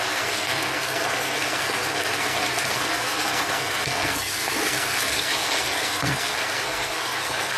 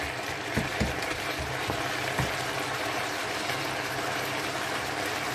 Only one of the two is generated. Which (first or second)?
first